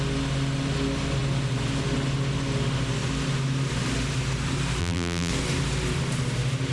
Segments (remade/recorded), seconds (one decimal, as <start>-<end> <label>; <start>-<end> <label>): 0.0-4.8 recorded; 4.8-5.3 remade; 5.3-6.7 recorded